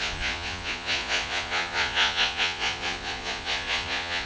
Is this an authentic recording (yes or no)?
no